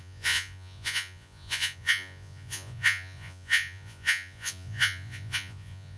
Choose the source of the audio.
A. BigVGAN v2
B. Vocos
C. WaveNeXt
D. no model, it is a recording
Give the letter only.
B